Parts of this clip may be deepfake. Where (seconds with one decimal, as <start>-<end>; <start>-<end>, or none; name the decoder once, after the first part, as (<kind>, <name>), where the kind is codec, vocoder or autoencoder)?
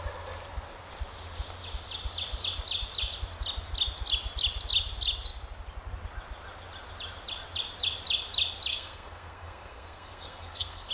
8.7-10.9 (codec, SNAC)